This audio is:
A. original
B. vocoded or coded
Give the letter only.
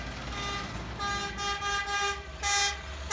A